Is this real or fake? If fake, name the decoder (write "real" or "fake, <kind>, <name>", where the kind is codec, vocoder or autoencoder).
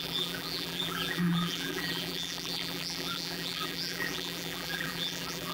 fake, vocoder, BigVGAN v2